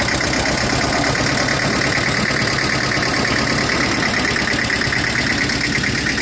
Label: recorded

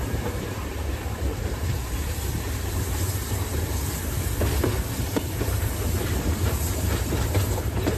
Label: remade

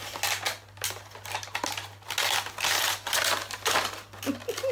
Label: recorded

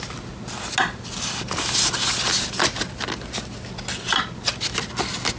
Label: recorded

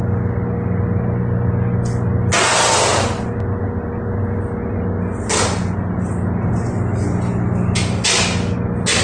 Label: recorded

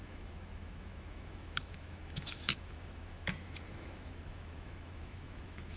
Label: remade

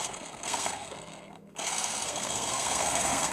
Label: remade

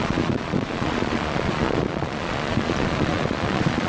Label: remade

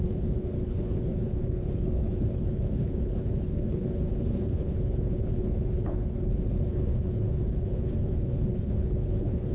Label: remade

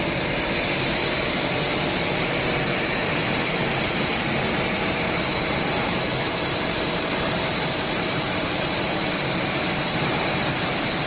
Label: remade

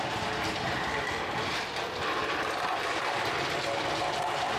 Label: remade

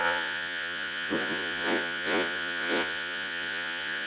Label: remade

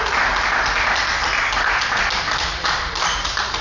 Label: recorded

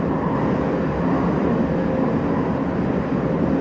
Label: recorded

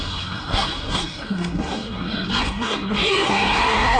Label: remade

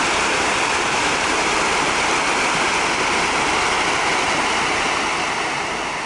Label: recorded